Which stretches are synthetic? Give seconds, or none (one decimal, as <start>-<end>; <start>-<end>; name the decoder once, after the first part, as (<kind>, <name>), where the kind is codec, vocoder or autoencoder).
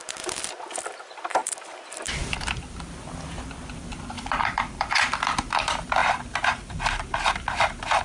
0.0-6.0 (vocoder, BigVGAN v2)